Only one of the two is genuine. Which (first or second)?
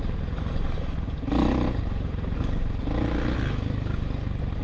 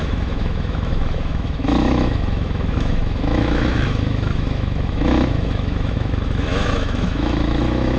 first